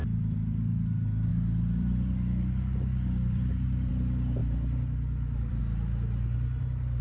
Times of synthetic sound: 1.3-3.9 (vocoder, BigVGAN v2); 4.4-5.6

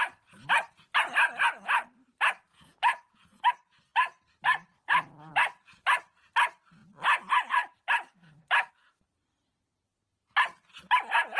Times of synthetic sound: 2.5-3.5 (vocoder, Vocos)

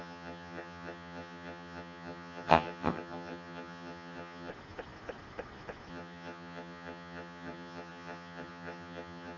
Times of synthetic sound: 0.0-4.5 (vocoder, HiFi-GAN); 5.9-9.4